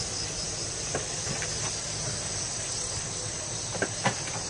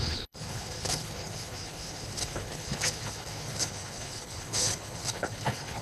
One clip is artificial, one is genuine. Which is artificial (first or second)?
second